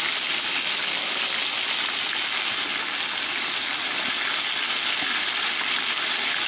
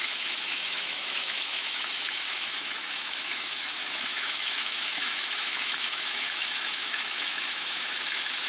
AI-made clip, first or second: second